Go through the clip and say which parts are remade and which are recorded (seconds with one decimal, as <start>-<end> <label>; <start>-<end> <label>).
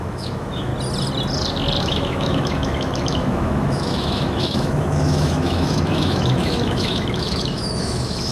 0.0-0.7 remade; 0.7-1.8 recorded; 1.8-8.3 remade